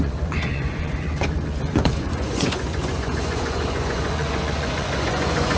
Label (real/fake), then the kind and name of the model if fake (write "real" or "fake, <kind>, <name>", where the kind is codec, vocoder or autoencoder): fake, vocoder, Vocos